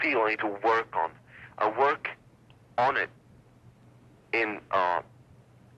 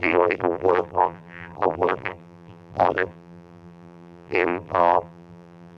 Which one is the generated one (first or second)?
second